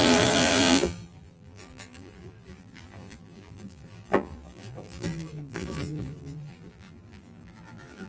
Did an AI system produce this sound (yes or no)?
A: yes